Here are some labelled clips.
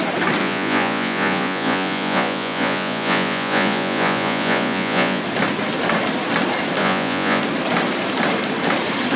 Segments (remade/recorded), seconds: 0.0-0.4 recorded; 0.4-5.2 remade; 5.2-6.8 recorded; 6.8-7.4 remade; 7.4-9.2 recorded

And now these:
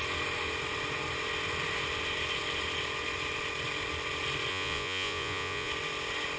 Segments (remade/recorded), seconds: 0.0-4.5 recorded; 4.5-5.7 remade; 5.7-6.4 recorded